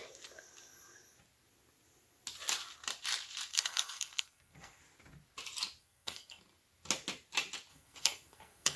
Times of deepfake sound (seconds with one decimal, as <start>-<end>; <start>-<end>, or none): 3.5-4.8; 5.8-6.4; 7.7-8.8